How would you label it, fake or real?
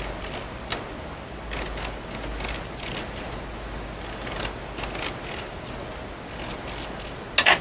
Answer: real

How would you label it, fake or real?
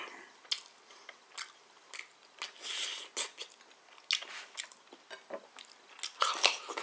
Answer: real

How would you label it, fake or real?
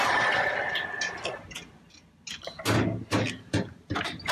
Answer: real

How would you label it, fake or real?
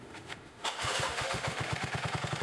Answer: fake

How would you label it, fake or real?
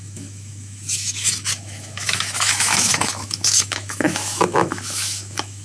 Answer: fake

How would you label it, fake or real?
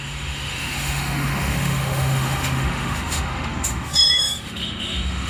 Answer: fake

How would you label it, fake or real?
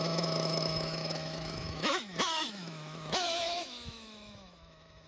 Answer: fake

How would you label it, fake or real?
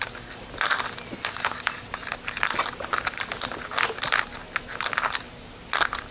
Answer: real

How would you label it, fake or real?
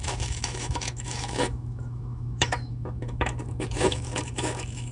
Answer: fake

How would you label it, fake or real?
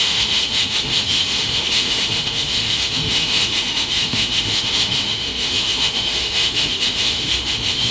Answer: fake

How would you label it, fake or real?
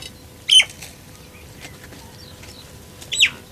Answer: real